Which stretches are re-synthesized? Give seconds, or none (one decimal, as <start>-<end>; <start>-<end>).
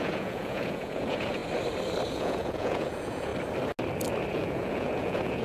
0.0-1.4; 2.1-3.3; 4.3-5.4